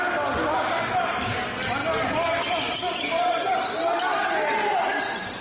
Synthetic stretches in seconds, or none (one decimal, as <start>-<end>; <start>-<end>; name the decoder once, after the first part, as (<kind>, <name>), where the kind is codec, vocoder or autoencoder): none